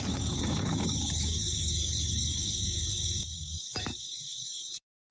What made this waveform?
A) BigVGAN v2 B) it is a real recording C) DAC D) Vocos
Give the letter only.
C